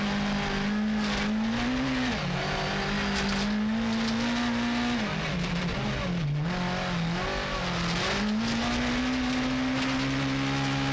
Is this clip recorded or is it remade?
recorded